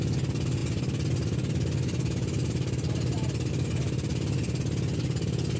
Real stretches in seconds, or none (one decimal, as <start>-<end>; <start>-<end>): 0.0-5.6